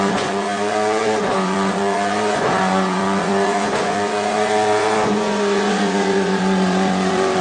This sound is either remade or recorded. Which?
remade